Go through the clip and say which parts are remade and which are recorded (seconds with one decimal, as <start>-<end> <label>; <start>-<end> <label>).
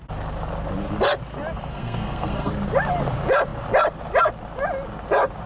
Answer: 0.0-1.7 recorded; 1.7-2.5 remade; 2.5-5.5 recorded